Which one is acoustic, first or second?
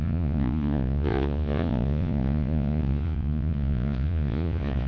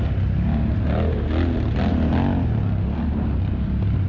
second